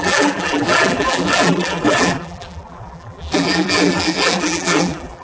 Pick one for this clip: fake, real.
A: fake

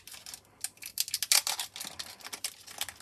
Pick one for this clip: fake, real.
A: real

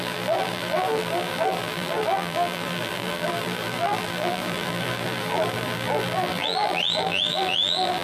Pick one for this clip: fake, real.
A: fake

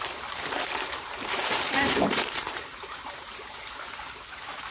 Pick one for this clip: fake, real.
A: fake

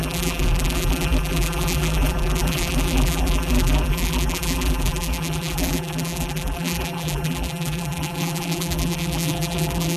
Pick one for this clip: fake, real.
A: fake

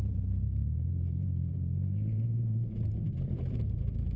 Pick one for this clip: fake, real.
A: fake